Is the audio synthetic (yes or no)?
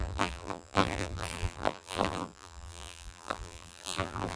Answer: yes